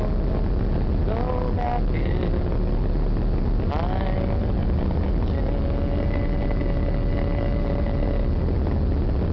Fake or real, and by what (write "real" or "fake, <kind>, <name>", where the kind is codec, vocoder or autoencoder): real